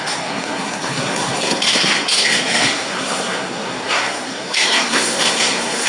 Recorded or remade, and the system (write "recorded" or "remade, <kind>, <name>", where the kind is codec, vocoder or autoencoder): remade, codec, SNAC